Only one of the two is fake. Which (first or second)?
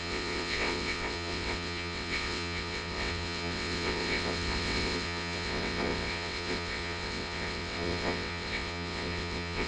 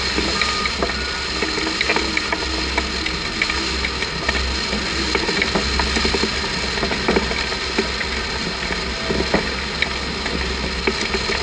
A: first